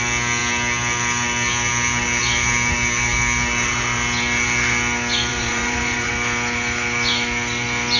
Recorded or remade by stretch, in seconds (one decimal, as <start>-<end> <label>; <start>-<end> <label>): 0.0-5.3 recorded; 5.3-6.1 remade; 6.1-8.0 recorded